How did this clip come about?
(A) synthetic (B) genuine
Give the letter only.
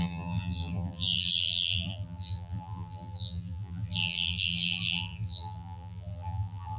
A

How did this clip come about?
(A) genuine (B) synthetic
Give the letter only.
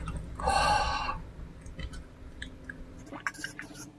A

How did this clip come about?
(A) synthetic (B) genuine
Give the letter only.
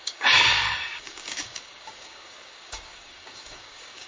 A